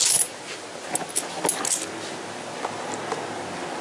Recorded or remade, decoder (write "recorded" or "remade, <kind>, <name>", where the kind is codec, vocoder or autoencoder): recorded